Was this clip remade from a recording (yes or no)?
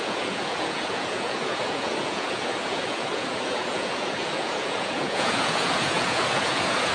yes